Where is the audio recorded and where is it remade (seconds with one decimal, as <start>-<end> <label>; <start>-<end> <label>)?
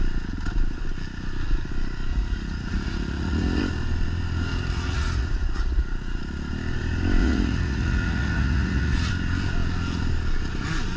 0.0-2.1 recorded; 2.1-3.6 remade; 3.6-4.5 recorded; 4.5-6.2 remade; 6.2-7.2 recorded; 7.2-9.1 remade; 9.1-11.0 recorded